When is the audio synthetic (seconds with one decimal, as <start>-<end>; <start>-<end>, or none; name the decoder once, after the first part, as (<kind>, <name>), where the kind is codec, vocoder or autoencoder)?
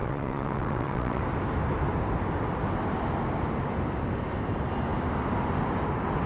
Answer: 0.0-1.2 (vocoder, WaveNeXt)